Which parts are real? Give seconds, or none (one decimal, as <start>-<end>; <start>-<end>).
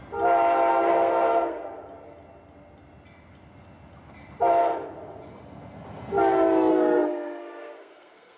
0.0-0.7; 1.7-6.7